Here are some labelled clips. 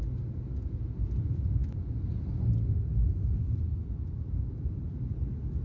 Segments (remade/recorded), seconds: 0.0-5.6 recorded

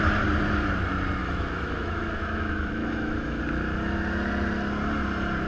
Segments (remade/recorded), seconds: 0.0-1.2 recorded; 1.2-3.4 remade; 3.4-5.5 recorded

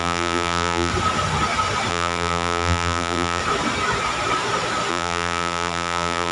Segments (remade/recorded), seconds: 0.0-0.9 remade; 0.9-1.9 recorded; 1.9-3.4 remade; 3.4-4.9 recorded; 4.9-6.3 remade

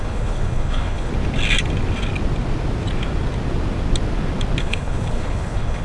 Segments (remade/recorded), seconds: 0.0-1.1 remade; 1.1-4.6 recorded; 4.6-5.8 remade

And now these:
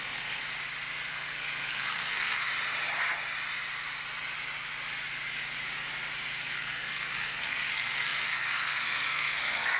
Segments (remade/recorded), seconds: 0.0-0.4 remade; 0.4-1.1 recorded; 1.1-2.5 remade; 2.5-6.4 recorded; 6.4-9.8 remade